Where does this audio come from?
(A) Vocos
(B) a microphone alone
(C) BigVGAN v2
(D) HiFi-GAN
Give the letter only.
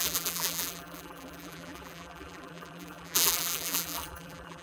C